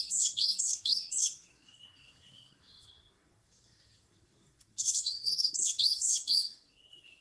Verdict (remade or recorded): remade